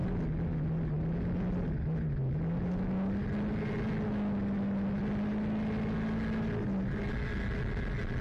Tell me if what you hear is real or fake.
real